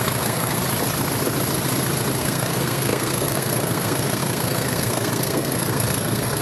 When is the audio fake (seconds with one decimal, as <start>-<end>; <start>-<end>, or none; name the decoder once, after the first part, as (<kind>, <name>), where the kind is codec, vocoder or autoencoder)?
0.0-0.6 (codec, SNAC); 2.2-6.4